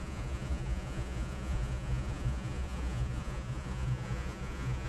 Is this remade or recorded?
remade